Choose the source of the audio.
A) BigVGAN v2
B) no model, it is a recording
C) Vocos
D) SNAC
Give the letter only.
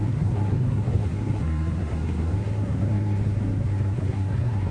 D